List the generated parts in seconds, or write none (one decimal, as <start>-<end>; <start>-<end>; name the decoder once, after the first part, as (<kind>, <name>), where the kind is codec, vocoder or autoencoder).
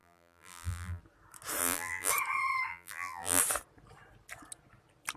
0.0-1.0 (vocoder, BigVGAN v2); 1.6-2.1; 2.7-3.4